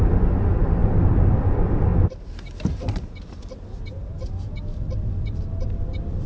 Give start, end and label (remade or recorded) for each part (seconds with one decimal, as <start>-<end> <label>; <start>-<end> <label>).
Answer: 0.0-6.3 recorded